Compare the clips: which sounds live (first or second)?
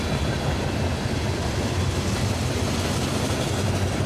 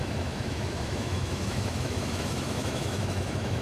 first